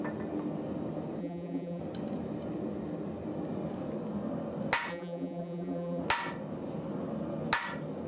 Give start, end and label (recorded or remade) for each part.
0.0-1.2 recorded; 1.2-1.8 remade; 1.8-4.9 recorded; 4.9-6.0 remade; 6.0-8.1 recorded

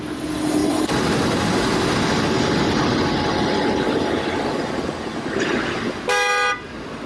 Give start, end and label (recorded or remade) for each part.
0.0-0.6 recorded; 0.6-2.1 remade; 2.1-7.1 recorded

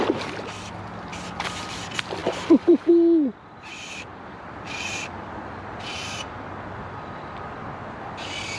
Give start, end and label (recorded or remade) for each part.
0.0-2.2 recorded; 2.2-2.9 remade; 2.9-4.1 recorded; 4.1-6.5 remade; 6.5-8.6 recorded

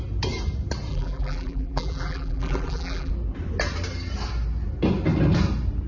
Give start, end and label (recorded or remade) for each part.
0.0-0.9 recorded; 0.9-3.1 remade; 3.1-5.9 recorded

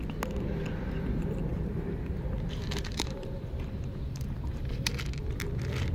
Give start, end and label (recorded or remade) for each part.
0.0-1.5 recorded; 1.5-4.9 remade; 4.9-5.9 recorded

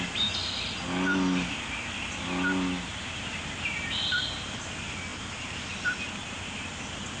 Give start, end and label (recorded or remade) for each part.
0.0-7.2 recorded

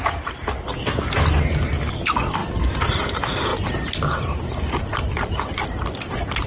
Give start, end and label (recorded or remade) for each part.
0.0-2.4 recorded; 2.4-3.0 remade; 3.0-3.5 recorded; 3.5-5.3 remade; 5.3-6.5 recorded